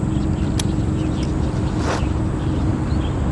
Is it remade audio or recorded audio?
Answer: recorded